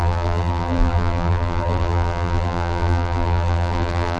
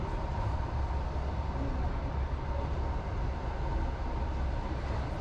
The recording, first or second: second